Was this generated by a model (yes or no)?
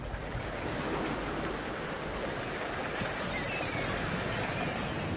no